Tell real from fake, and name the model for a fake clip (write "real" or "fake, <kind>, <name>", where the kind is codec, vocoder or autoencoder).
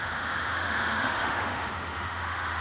fake, autoencoder, DAC-VAE